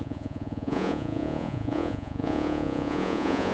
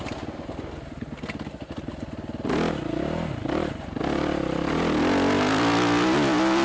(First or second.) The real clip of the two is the second